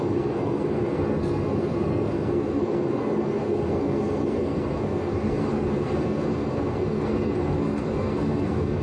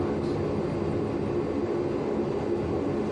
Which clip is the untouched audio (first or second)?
second